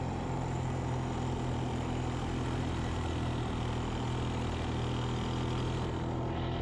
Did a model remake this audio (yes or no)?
no